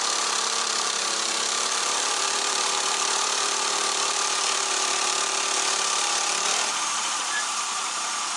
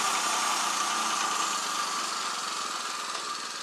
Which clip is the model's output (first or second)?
first